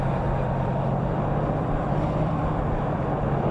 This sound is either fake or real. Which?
fake